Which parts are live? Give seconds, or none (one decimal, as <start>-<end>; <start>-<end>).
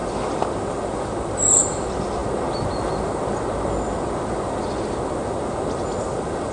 0.0-6.5